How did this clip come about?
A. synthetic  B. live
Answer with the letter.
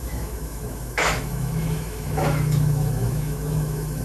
A